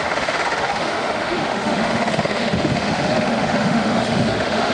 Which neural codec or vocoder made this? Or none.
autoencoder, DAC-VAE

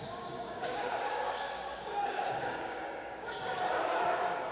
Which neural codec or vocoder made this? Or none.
codec, DAC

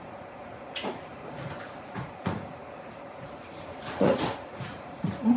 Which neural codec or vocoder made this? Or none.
vocoder, Vocos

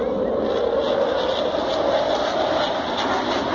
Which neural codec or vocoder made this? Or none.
none